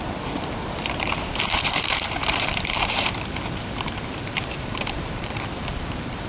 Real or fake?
fake